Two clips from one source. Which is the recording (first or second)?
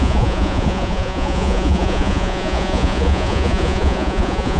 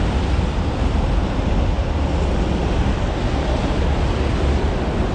second